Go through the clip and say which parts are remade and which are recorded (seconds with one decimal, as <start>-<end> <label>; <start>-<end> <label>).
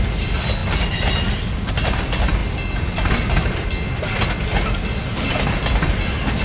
0.0-6.4 recorded